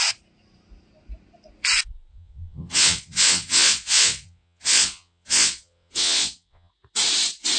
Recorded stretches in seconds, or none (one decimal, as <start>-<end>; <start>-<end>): 0.0-2.1; 6.7-7.6